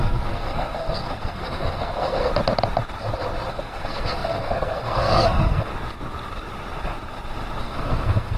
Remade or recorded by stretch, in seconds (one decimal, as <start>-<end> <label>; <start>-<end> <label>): 0.0-2.3 remade; 2.3-3.5 recorded; 3.5-5.7 remade; 5.7-7.6 recorded; 7.6-8.4 remade